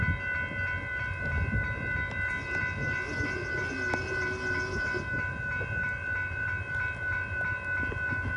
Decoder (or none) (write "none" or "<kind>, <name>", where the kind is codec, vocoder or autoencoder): none